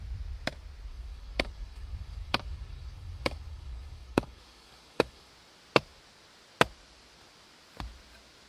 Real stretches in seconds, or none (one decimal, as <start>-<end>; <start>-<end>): 0.0-0.9; 5.3-8.5